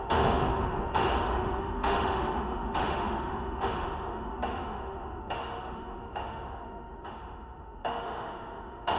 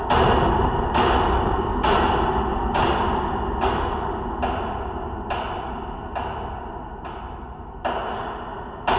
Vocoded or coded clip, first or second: first